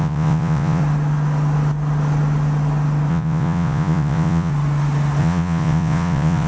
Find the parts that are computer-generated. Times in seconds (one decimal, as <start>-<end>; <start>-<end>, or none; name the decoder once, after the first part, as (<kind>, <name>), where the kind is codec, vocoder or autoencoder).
0.0-0.8 (vocoder, Vocos); 3.1-4.5; 5.2-6.5